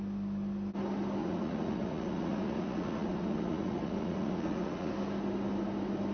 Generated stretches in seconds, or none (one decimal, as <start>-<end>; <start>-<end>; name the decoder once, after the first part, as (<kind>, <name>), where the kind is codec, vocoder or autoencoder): 1.2-4.9 (vocoder, Vocos)